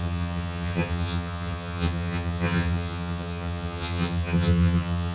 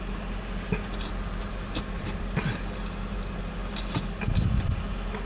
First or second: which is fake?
first